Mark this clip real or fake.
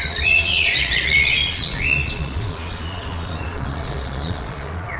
fake